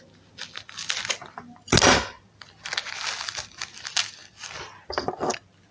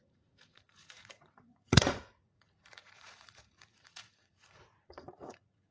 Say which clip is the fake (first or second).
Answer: second